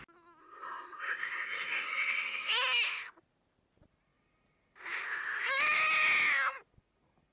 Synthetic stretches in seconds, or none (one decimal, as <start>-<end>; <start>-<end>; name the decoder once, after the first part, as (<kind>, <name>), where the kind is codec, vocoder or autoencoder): 0.4-2.5 (codec, SNAC)